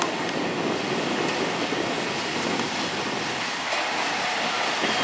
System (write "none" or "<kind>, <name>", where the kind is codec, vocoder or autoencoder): none